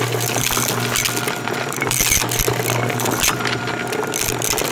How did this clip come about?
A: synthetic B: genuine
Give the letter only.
B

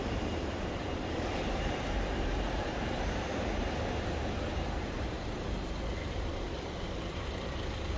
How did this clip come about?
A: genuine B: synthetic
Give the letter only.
B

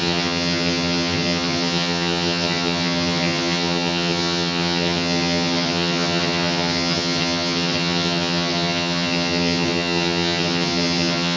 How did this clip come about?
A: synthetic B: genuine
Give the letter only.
A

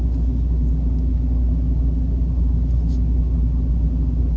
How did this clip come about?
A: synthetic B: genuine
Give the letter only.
B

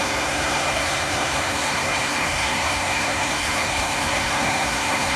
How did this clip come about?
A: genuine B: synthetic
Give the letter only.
B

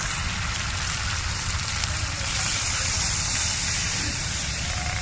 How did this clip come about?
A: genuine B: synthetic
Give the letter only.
B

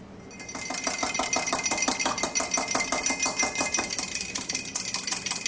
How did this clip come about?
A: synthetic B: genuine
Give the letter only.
B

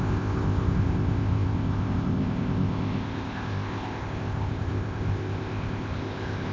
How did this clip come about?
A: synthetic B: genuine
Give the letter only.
A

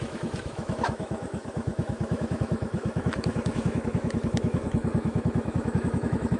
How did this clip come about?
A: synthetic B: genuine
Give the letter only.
A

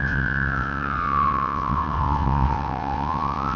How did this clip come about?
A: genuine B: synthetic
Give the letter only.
B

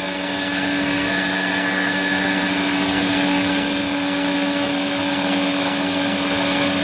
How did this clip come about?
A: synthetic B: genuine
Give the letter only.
A